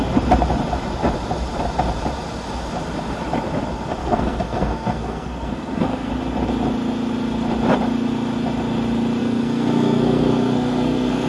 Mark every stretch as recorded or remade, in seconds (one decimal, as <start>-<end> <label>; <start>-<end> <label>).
0.0-4.0 recorded; 4.0-6.1 remade; 6.1-9.2 recorded; 9.2-11.3 remade